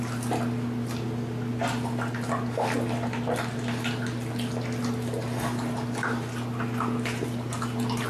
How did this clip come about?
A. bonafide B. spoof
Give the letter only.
A